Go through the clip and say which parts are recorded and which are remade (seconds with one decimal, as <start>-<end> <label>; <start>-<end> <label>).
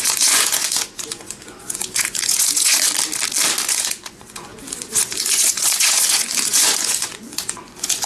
0.0-2.9 remade; 2.9-3.7 recorded; 3.7-8.1 remade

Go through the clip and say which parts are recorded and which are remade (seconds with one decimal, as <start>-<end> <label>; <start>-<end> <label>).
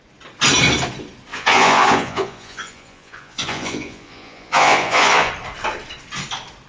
0.0-1.3 recorded; 1.3-5.3 remade; 5.3-6.7 recorded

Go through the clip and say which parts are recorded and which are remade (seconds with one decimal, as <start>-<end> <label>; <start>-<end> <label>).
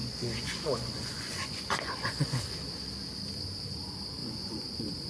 0.0-2.4 remade; 2.4-4.2 recorded; 4.2-5.1 remade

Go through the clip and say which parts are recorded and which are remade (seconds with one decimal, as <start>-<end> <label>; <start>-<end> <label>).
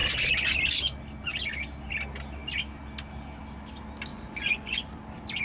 0.0-4.1 recorded; 4.1-4.9 remade; 4.9-5.4 recorded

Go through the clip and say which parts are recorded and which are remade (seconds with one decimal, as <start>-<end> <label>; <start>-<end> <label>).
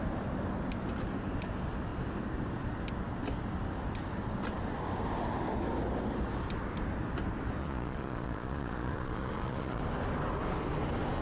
0.0-7.6 recorded; 7.6-9.8 remade; 9.8-11.2 recorded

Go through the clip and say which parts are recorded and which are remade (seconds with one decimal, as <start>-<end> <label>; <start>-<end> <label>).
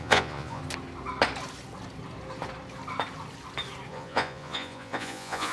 0.0-0.6 remade; 0.6-3.9 recorded; 3.9-5.5 remade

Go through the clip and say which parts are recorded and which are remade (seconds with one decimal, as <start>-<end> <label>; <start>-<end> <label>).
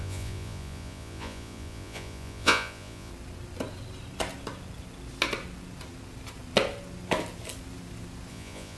0.0-3.1 remade; 3.1-8.3 recorded; 8.3-8.8 remade